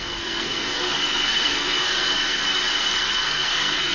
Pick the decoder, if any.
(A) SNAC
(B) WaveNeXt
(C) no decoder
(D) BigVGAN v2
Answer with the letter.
A